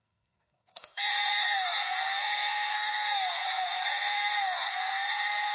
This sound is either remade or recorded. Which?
remade